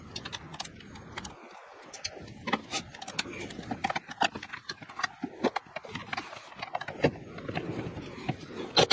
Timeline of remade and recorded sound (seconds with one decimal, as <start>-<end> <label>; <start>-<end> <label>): 0.0-8.9 recorded